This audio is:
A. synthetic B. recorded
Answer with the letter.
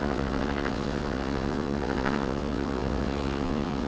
A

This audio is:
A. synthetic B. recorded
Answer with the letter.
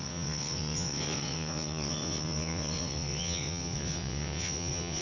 A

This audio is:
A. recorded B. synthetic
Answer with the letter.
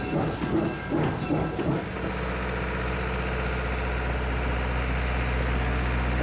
A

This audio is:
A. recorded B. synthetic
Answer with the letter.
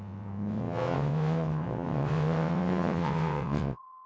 B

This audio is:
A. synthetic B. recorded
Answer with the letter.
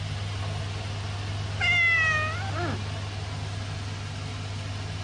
B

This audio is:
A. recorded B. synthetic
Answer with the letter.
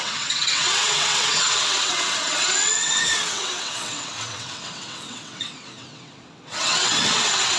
B